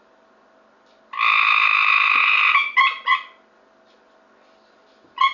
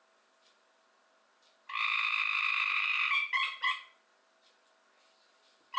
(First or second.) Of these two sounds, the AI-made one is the second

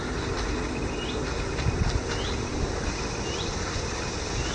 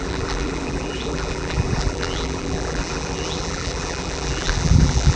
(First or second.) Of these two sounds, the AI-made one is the second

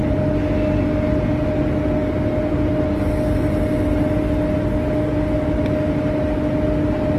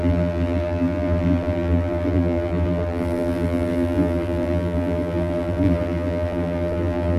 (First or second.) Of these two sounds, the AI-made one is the second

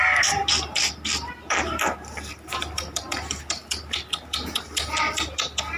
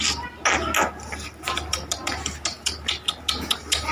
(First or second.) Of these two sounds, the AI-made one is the first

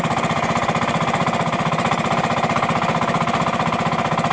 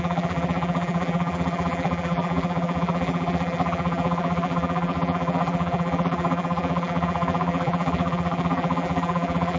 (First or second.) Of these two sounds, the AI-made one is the second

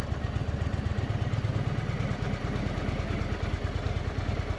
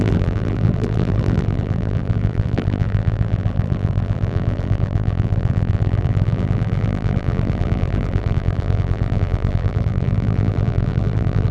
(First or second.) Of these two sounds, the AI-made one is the second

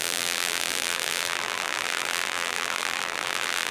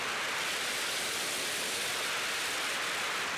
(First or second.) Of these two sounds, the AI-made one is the first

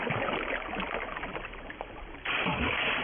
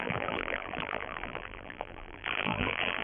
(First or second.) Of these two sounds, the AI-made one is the second